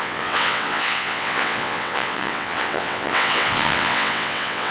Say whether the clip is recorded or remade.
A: remade